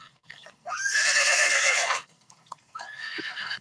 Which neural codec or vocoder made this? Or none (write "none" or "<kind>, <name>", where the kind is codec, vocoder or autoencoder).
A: codec, SNAC